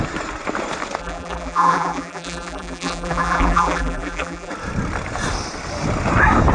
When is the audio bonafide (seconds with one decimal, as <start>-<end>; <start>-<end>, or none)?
0.0-1.0; 4.5-6.5